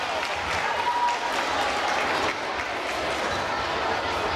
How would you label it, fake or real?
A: real